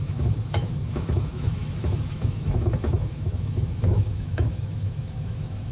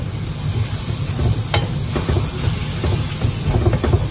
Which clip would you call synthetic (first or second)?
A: first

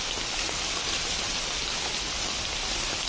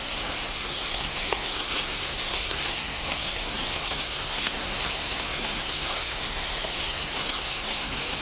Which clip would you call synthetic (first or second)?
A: second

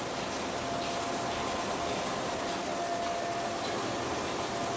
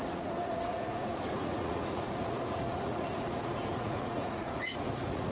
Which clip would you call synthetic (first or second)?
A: second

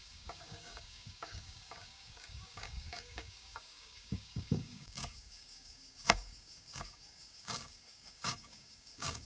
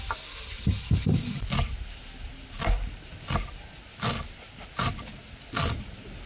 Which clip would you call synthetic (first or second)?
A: first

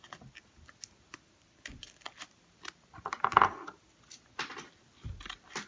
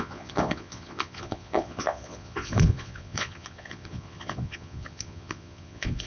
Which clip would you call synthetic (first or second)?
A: second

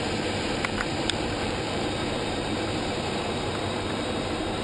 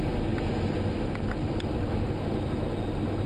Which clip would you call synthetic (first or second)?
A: first